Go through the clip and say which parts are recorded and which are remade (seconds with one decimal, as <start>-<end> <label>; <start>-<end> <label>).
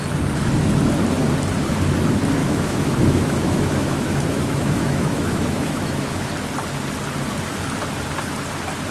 0.0-2.4 recorded; 2.4-6.3 remade; 6.3-8.9 recorded